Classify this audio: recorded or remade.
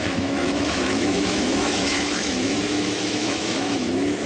remade